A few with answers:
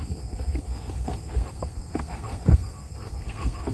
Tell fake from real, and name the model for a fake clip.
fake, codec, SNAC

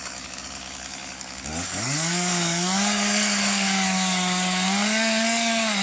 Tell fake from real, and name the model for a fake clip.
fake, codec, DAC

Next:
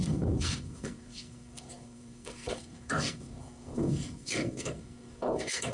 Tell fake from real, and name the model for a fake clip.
fake, codec, SNAC